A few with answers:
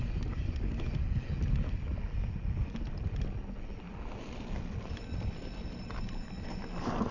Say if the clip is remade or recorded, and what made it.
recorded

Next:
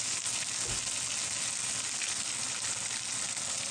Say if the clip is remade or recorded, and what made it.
recorded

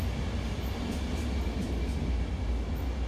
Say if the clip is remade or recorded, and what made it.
recorded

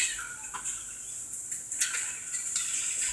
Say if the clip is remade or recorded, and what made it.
recorded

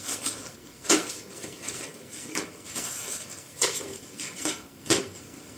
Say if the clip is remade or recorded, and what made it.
remade, codec, SNAC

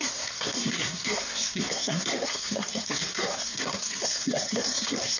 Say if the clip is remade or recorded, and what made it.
remade, codec, SNAC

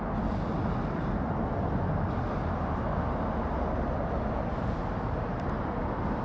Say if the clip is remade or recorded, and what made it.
recorded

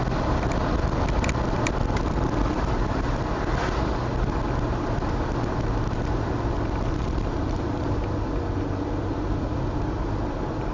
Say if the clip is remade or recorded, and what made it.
recorded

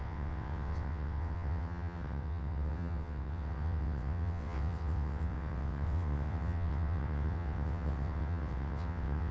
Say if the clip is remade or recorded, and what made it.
remade, vocoder, WaveNeXt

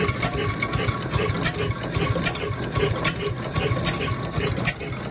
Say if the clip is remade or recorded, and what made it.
recorded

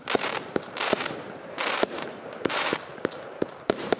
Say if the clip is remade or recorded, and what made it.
remade, vocoder, BigVGAN v2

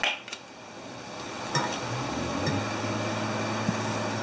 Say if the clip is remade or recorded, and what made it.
recorded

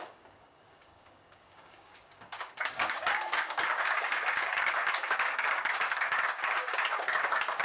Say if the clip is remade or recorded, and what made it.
remade, codec, DAC